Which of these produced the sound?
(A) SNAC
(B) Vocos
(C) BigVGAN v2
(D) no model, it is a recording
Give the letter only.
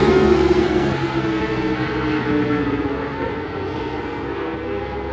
A